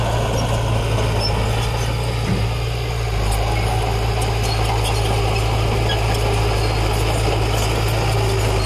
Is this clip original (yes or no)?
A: yes